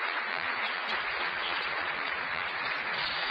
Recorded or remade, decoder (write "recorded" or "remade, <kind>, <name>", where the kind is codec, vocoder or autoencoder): remade, vocoder, Vocos